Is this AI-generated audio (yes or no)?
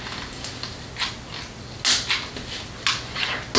no